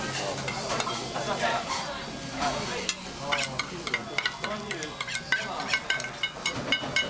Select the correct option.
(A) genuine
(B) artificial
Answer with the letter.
A